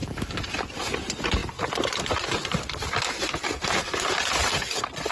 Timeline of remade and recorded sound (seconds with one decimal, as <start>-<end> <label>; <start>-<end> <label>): 0.0-0.5 remade; 0.5-5.1 recorded